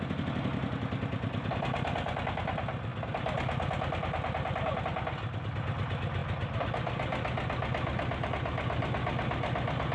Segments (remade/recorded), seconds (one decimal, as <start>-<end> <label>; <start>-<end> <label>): 0.0-9.9 recorded